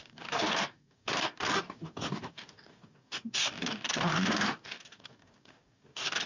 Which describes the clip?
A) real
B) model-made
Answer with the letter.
B